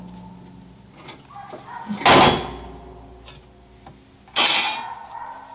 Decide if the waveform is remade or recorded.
recorded